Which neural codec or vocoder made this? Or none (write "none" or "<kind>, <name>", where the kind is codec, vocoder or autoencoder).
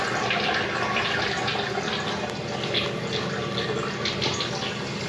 none